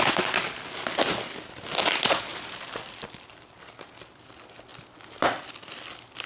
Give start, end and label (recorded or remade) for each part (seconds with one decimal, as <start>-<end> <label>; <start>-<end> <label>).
0.0-6.3 recorded